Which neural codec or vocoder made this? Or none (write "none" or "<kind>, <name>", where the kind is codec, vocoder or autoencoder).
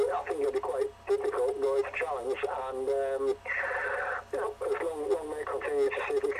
none